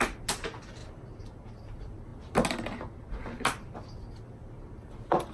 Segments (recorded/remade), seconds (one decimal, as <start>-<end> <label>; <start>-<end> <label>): 0.0-5.3 recorded

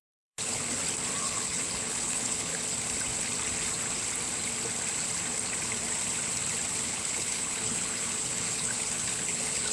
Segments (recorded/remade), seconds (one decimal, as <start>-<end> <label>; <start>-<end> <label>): 0.0-0.6 remade; 0.6-1.2 recorded; 1.2-2.5 remade; 2.5-6.8 recorded; 6.8-9.7 remade